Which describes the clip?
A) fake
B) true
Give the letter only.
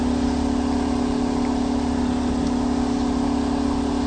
B